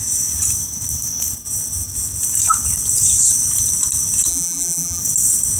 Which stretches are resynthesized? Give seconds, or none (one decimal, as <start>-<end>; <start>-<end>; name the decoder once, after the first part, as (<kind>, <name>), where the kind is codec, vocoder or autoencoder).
4.3-5.0 (vocoder, BigVGAN v2)